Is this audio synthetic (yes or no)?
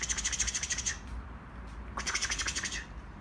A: no